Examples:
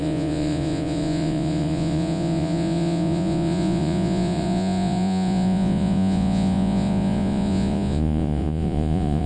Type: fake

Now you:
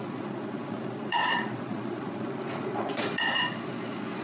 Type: fake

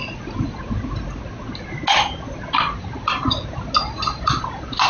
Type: real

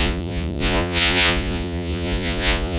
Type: fake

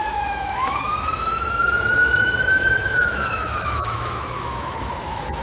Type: fake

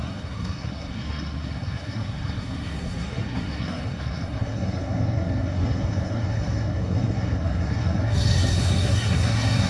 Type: fake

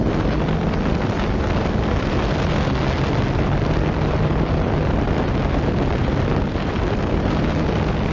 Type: real